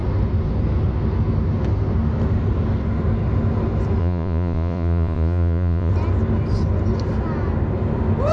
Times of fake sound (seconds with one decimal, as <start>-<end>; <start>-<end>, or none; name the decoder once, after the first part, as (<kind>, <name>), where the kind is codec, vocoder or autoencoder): 4.0-5.9 (vocoder, Vocos)